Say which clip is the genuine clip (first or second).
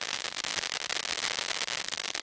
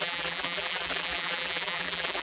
first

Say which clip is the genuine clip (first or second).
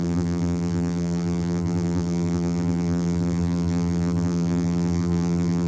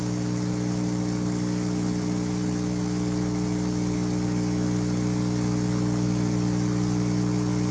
second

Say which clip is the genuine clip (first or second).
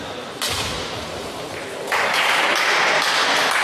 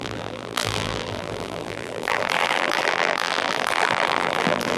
first